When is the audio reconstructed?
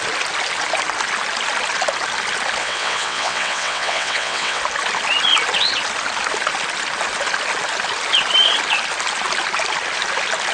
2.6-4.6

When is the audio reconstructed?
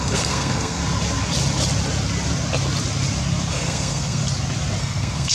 0.0-0.8; 3.5-4.2; 4.8-5.3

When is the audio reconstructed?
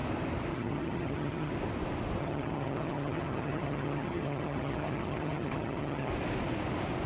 0.5-1.5; 2.2-6.1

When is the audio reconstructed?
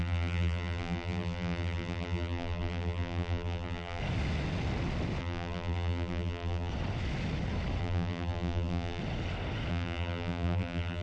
0.0-4.0; 5.2-6.7; 7.8-9.0; 9.7-11.0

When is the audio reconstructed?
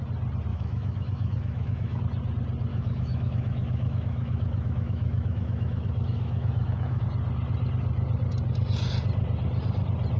0.5-2.0; 2.7-7.0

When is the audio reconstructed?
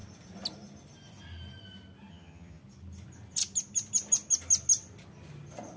2.1-2.6